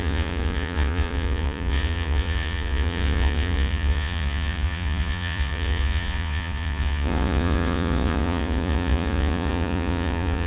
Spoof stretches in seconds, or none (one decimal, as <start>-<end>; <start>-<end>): 0.0-10.5